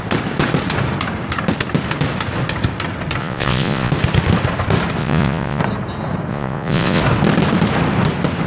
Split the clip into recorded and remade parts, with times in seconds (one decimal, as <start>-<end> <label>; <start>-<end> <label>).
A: 0.0-3.2 recorded; 3.2-3.9 remade; 3.9-5.0 recorded; 5.0-5.6 remade; 5.6-6.3 recorded; 6.3-7.0 remade; 7.0-8.5 recorded